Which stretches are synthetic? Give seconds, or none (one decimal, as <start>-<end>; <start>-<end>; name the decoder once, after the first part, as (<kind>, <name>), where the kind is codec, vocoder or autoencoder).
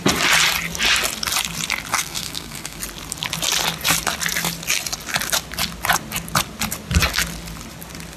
1.9-2.8 (codec, SNAC)